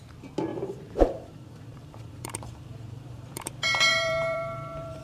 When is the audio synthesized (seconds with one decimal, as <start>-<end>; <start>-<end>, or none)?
0.5-3.5; 3.9-5.0